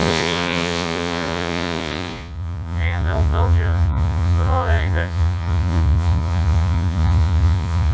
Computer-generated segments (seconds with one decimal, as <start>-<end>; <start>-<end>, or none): 0.0-7.9